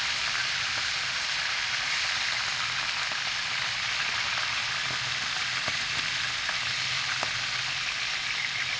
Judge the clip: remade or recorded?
recorded